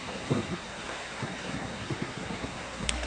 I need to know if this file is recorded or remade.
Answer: remade